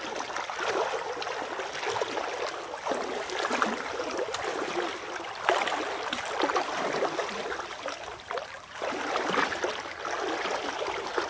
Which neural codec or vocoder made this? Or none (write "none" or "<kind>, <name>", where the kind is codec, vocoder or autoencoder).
none